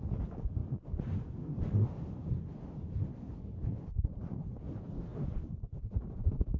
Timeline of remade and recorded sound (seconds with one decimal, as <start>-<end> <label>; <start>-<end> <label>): 0.0-6.6 recorded